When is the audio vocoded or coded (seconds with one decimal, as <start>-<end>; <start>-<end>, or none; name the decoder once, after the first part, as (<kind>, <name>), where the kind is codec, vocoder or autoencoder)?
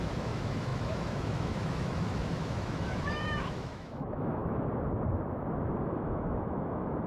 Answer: 0.0-4.4 (autoencoder, DAC-VAE); 5.8-7.1